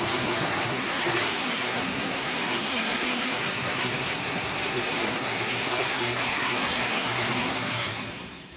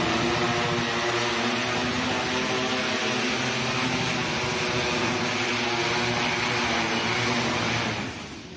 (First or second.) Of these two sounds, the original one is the second